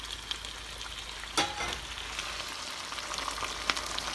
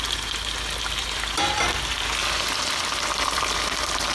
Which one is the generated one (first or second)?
second